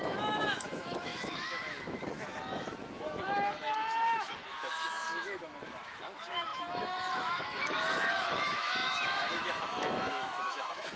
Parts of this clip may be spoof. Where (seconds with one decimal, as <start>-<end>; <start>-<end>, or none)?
0.0-11.0